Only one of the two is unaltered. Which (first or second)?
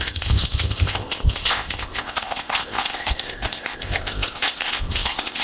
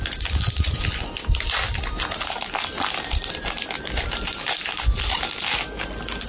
second